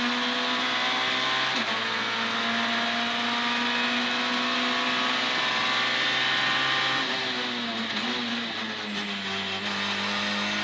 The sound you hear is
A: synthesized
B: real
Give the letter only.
B